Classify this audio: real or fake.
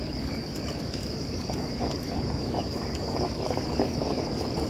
fake